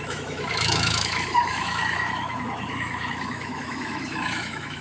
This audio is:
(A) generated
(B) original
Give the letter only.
A